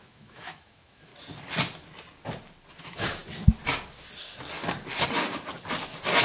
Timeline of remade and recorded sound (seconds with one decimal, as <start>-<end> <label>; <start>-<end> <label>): 0.0-1.1 remade; 1.1-2.8 recorded; 2.8-3.2 remade; 3.2-6.2 recorded